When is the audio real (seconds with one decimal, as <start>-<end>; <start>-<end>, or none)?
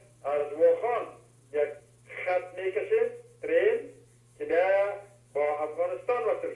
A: 0.0-6.5